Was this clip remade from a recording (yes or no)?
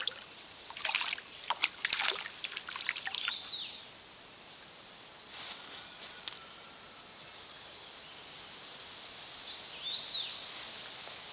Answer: no